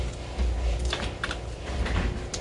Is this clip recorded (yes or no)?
yes